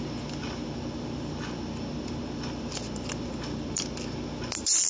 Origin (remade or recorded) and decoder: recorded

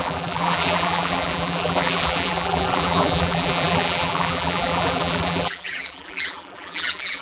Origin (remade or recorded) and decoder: remade, vocoder, BigVGAN v2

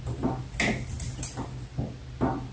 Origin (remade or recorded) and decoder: recorded